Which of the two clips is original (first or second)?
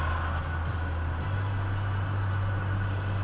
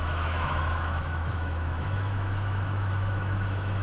first